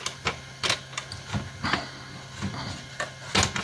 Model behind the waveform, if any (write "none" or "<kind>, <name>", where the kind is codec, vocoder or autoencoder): none